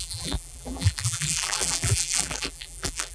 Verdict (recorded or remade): remade